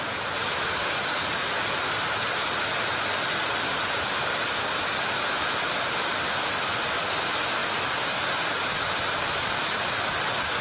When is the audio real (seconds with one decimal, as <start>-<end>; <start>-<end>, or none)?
0.0-10.6